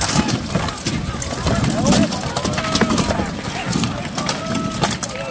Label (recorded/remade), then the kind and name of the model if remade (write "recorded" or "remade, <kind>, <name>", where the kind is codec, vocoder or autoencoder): recorded